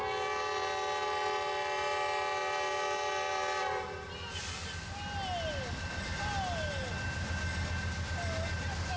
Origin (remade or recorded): recorded